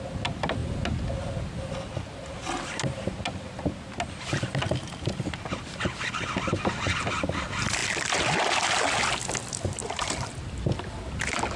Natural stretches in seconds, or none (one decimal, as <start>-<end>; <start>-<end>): 0.0-11.6